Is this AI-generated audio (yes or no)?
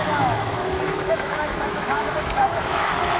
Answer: yes